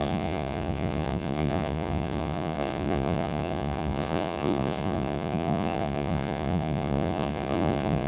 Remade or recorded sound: remade